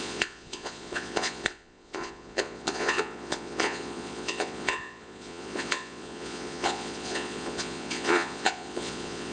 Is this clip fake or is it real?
fake